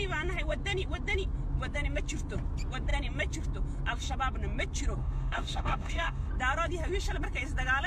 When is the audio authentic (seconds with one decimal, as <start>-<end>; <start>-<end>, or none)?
0.0-5.0; 6.3-7.9